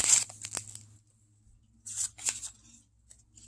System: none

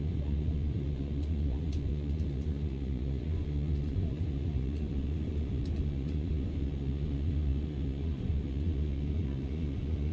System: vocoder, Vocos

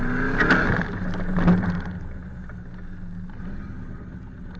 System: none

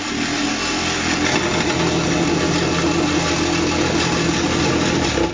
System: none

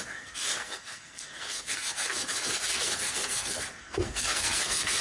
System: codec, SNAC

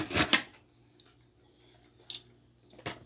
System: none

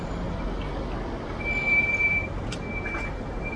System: none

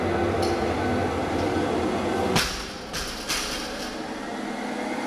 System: none